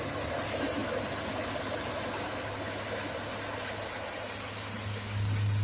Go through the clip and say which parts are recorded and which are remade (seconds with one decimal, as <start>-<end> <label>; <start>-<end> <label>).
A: 0.0-5.6 recorded